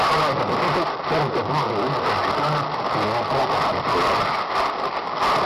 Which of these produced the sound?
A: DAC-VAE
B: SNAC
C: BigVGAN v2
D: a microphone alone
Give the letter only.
D